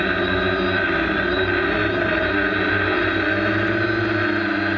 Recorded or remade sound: recorded